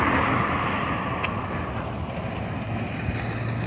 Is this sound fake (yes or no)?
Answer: no